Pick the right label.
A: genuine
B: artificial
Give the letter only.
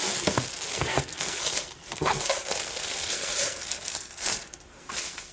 B